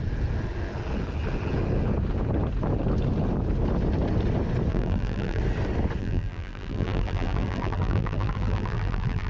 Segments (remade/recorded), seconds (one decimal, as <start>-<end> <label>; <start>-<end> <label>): 0.0-4.7 recorded; 4.7-5.4 remade; 5.4-6.0 recorded; 6.0-9.3 remade